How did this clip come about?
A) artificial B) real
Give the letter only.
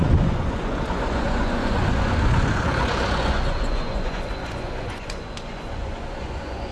A